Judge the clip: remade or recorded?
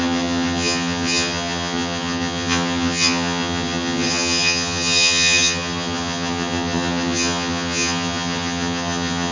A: remade